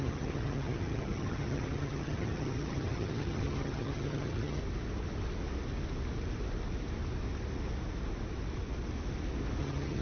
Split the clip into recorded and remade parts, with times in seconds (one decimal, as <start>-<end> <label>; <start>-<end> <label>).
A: 0.0-4.6 remade; 4.6-9.6 recorded; 9.6-10.0 remade